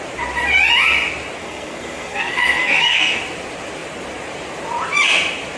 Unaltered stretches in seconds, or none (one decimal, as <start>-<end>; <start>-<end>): 0.0-1.4; 3.2-5.6